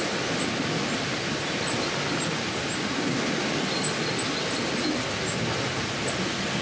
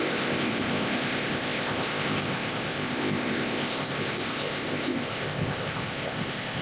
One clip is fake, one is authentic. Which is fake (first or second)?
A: second